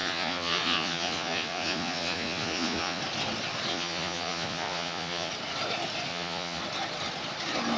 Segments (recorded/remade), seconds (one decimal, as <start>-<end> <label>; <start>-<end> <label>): 0.0-3.0 remade; 3.0-3.7 recorded; 3.7-5.3 remade; 5.3-6.1 recorded; 6.1-6.6 remade; 6.6-7.8 recorded